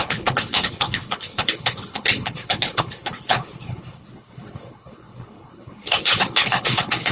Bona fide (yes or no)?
no